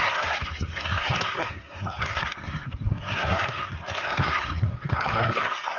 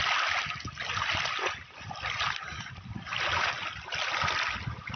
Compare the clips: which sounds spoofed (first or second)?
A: first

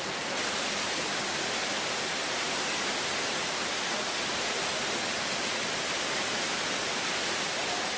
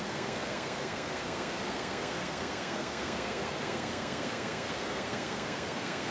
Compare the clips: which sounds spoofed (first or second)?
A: second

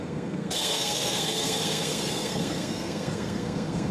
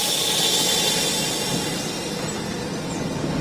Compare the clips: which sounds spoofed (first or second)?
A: first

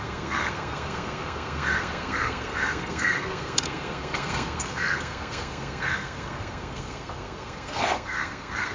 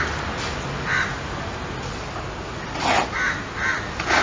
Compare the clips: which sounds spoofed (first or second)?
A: first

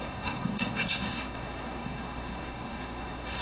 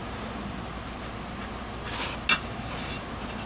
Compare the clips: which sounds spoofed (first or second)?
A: first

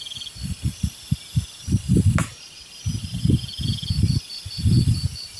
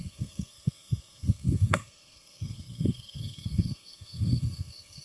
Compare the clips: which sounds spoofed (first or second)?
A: second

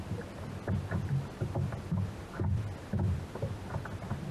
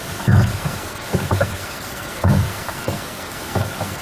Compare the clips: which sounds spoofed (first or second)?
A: second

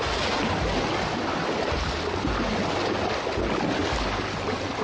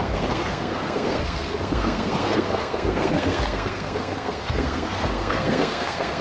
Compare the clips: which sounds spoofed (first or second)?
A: second